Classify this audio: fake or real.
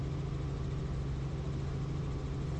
real